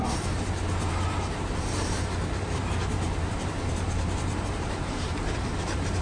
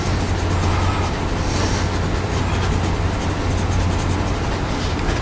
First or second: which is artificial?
first